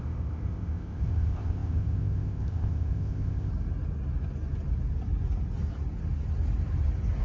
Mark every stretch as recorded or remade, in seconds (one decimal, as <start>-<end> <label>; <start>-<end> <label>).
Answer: 0.0-3.5 remade; 3.5-7.2 recorded